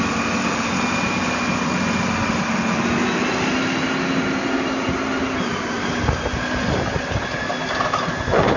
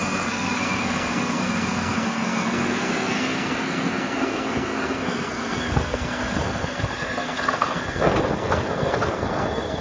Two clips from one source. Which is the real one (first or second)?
first